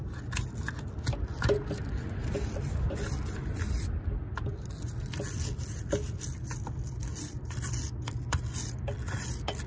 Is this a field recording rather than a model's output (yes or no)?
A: yes